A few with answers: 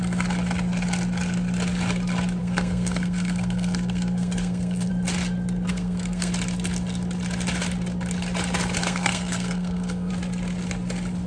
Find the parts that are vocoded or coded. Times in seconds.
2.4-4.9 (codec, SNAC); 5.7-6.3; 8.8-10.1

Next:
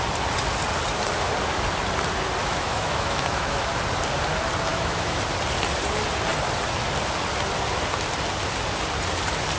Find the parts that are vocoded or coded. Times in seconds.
2.4-3.7 (autoencoder, DAC-VAE); 4.7-5.2

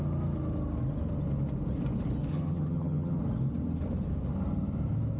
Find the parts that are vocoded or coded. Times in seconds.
2.3-3.2 (vocoder, HiFi-GAN)

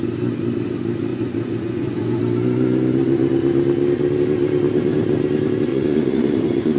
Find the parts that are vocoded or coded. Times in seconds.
1.1-2.2 (vocoder, Vocos); 5.7-6.8

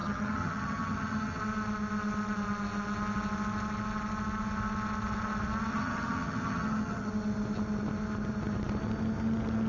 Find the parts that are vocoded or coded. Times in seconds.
0.0-1.4 (vocoder, HiFi-GAN); 5.7-7.1

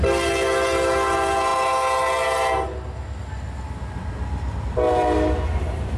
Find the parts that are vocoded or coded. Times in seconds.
none

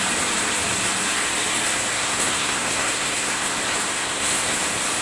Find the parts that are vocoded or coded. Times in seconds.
1.9-3.5 (codec, SNAC); 3.9-4.6

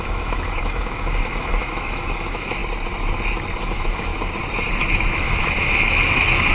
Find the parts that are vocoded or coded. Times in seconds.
0.0-2.6 (autoencoder, DAC-VAE); 3.6-4.1; 5.1-6.5